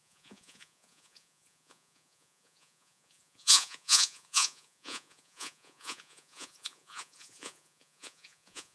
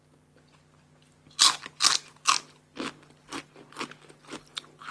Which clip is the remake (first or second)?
first